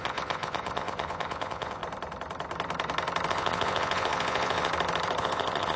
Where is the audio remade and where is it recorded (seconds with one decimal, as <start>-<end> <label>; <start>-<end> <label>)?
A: 0.0-1.8 remade; 1.8-3.3 recorded; 3.3-4.7 remade; 4.7-5.2 recorded; 5.2-5.8 remade